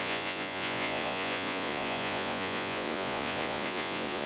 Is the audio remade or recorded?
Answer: remade